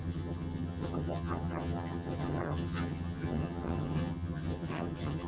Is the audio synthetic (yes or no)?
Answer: yes